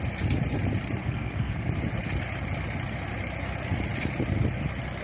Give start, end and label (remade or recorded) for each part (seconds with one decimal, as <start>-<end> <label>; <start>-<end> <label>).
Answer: 0.0-1.0 recorded; 1.0-1.7 remade; 1.7-5.0 recorded